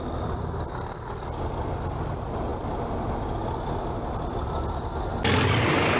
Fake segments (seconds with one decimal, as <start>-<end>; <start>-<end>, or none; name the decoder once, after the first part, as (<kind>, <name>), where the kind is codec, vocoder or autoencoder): none